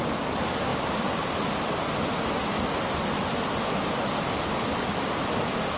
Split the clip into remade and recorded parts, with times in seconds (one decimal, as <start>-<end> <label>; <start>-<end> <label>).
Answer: 0.0-0.7 recorded; 0.7-1.3 remade; 1.3-5.8 recorded